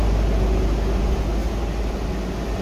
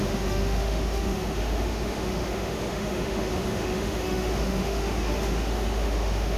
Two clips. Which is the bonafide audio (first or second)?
first